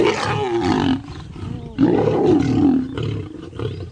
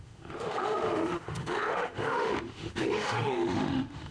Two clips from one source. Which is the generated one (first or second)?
second